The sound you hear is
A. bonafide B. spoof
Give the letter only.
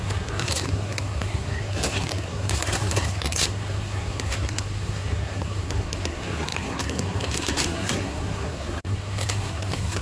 B